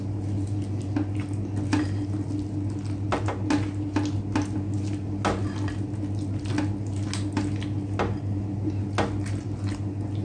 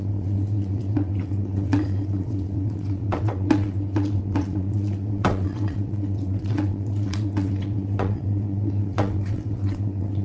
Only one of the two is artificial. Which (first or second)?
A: second